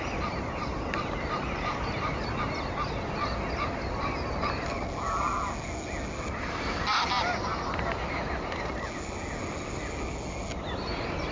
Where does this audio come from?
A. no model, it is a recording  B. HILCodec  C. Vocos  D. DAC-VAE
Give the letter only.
A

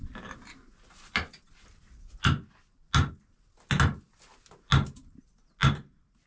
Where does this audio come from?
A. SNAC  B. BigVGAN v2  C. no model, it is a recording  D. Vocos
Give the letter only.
C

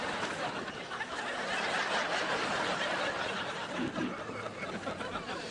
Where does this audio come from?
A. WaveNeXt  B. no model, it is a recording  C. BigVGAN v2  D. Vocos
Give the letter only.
B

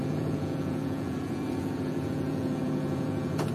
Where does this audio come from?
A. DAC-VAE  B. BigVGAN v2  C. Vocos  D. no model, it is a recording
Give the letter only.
C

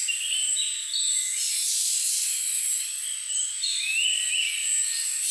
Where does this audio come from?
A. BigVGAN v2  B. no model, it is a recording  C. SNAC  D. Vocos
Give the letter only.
B